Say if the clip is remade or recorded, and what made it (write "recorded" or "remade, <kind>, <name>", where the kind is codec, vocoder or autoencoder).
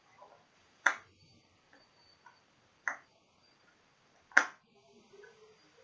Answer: recorded